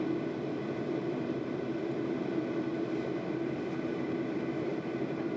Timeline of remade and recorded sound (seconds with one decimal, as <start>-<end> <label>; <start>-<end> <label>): 0.0-2.7 remade; 2.7-3.3 recorded; 3.3-4.7 remade; 4.7-5.4 recorded